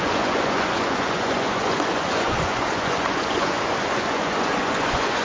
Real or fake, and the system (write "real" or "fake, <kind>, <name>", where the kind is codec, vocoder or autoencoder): fake, vocoder, Vocos